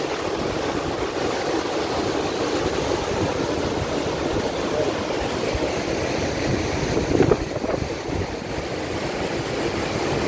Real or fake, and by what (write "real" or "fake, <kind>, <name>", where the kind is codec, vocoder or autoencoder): real